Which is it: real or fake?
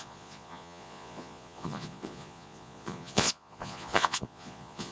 fake